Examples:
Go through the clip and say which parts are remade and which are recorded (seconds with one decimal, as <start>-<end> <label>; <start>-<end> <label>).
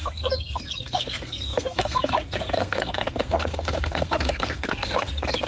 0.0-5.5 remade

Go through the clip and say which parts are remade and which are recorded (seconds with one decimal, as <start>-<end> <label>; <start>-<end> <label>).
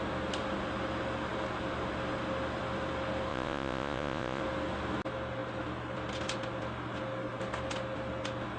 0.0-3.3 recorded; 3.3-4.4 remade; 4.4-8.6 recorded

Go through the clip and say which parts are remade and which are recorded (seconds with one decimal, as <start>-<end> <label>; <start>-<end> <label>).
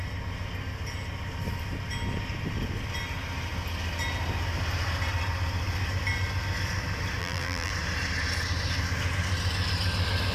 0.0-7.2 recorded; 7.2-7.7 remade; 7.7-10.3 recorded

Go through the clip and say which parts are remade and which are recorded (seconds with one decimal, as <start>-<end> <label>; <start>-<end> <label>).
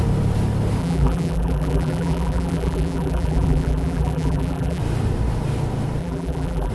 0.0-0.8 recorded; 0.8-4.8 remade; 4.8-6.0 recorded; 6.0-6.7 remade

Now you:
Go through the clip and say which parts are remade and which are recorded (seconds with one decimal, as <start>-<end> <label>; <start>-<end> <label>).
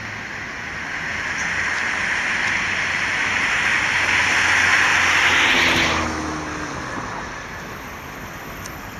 0.0-9.0 recorded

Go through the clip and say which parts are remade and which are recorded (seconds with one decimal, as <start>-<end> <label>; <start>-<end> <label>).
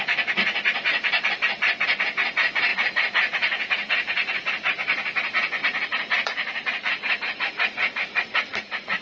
0.0-2.7 recorded; 2.7-4.7 remade; 4.7-5.6 recorded; 5.6-9.0 remade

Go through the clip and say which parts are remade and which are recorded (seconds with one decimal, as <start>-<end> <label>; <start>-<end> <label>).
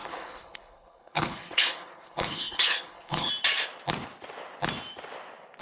0.0-3.3 remade; 3.3-5.6 recorded